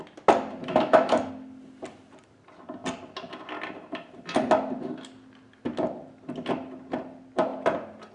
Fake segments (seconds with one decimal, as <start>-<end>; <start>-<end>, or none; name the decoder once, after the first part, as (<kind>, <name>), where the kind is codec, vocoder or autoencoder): 0.6-1.3 (autoencoder, DAC-VAE)